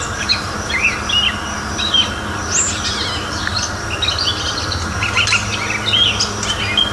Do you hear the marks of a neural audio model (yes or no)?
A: no